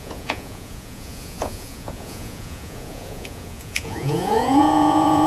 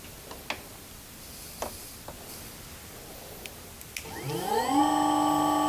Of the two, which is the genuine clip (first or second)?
second